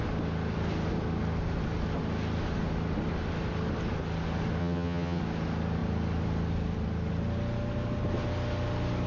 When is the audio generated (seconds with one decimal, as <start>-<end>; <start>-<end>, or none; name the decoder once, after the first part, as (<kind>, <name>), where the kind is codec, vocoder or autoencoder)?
4.6-5.2 (vocoder, HiFi-GAN)